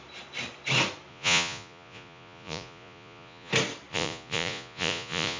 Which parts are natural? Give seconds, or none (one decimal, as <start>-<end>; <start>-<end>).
0.0-1.1; 3.5-3.9